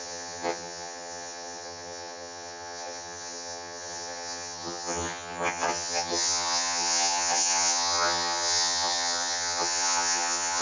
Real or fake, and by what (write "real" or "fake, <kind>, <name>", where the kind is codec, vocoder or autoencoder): fake, vocoder, HiFi-GAN